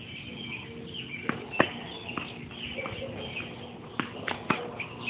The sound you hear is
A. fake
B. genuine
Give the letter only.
B